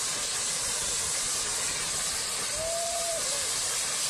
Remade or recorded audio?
remade